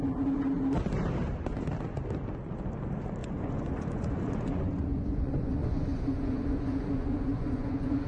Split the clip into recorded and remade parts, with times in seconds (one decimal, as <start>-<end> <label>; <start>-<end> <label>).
0.0-3.2 recorded; 3.2-8.1 remade